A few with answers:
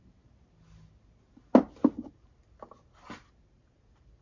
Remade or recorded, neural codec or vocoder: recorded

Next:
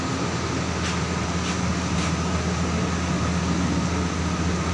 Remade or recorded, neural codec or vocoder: recorded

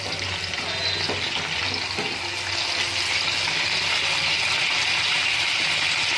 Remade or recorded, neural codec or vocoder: recorded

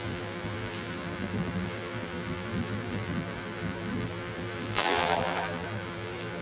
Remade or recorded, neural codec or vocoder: remade, vocoder, BigVGAN v2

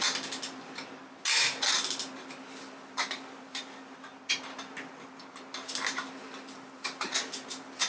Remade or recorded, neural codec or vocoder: recorded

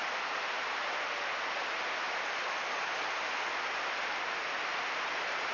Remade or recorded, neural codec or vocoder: recorded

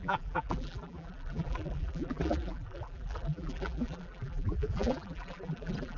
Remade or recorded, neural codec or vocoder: remade, vocoder, BigVGAN v2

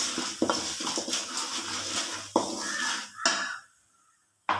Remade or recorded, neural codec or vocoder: recorded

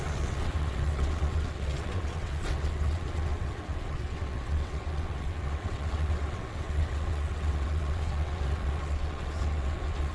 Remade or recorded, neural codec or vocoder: remade, vocoder, WaveNeXt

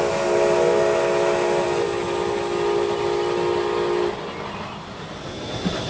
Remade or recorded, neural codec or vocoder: recorded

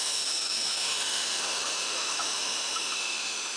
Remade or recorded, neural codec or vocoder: remade, autoencoder, DAC-VAE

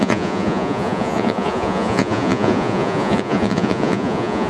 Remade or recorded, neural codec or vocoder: remade, vocoder, Vocos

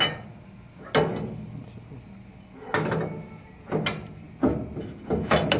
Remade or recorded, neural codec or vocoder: recorded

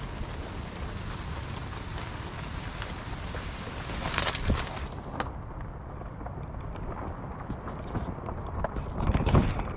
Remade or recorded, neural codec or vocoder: recorded